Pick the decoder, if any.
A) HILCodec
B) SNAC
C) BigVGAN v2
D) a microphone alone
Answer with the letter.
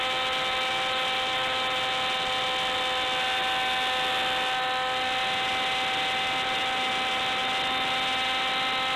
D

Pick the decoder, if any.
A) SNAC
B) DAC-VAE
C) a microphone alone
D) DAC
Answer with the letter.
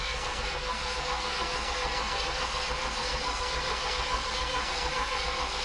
A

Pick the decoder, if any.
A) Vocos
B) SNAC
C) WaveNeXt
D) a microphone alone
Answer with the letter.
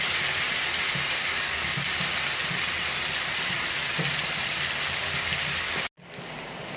D